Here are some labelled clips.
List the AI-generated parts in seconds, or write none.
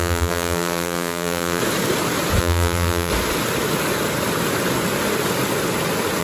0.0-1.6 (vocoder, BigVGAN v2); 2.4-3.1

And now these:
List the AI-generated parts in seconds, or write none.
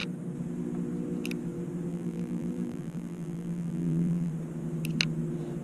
1.9-4.3 (vocoder, BigVGAN v2)